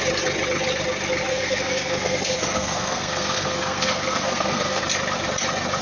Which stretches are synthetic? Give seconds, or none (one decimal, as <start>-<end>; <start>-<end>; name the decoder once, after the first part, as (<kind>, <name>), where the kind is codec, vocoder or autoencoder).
1.3-4.8 (codec, SNAC)